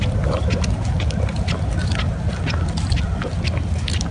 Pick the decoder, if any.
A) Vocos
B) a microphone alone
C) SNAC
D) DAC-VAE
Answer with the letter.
B